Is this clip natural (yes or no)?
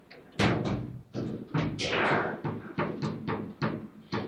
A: yes